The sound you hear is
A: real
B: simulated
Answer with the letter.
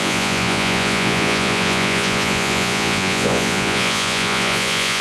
B